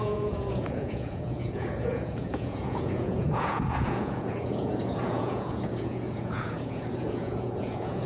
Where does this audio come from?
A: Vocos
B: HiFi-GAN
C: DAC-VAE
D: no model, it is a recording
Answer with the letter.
A